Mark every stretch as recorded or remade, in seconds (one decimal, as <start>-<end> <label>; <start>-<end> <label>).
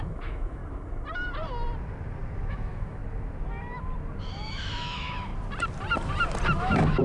0.0-0.6 remade; 0.6-2.5 recorded; 2.5-3.0 remade; 3.0-4.4 recorded; 4.4-5.3 remade; 5.3-6.6 recorded; 6.6-7.0 remade